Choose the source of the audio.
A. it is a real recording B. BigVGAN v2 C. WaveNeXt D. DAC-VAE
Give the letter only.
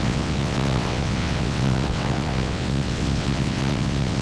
C